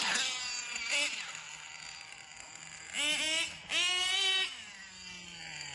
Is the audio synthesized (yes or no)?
no